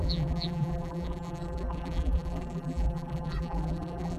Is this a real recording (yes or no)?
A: no